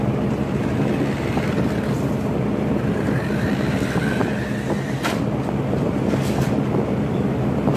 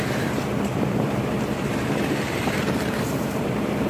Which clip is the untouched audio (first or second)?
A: first